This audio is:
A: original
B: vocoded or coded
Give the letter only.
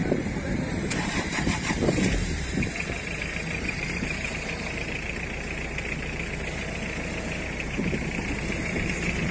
B